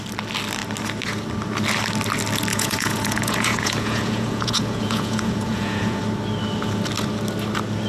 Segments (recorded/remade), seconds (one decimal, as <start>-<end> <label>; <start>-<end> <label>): 0.0-2.5 recorded; 2.5-6.0 remade; 6.0-7.9 recorded